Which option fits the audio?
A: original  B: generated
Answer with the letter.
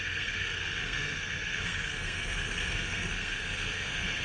B